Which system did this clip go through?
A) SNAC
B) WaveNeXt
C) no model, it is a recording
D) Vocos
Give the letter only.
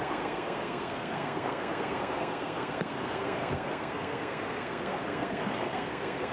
A